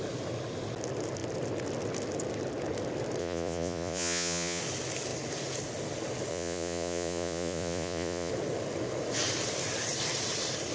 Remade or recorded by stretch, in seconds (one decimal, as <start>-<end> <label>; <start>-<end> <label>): 0.0-3.2 recorded; 3.2-4.6 remade; 4.6-6.3 recorded; 6.3-8.3 remade; 8.3-10.7 recorded